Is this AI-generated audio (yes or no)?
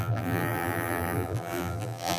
yes